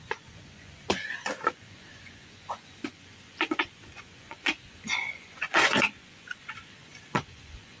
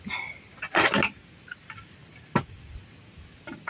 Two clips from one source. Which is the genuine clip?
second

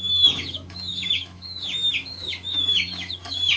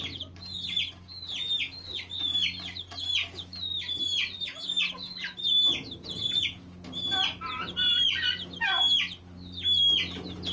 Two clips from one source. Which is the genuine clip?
second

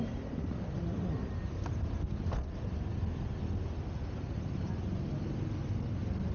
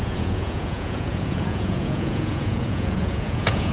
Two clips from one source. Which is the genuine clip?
first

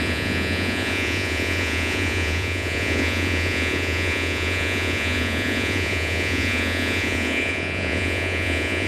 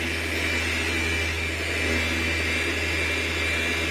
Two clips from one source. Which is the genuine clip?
second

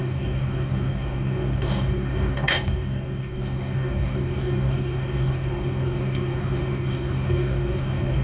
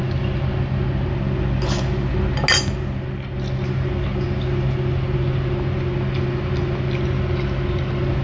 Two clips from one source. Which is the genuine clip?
second